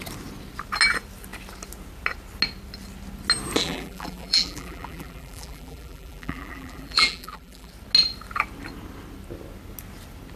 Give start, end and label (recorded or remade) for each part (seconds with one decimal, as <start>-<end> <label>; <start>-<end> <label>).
0.0-3.6 recorded; 3.6-7.7 remade; 7.7-10.4 recorded